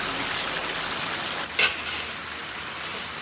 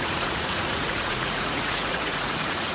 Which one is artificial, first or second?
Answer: second